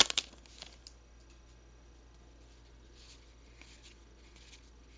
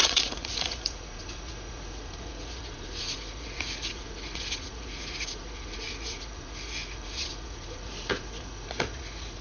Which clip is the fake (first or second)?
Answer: second